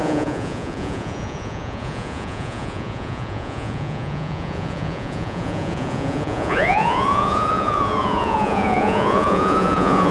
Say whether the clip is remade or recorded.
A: remade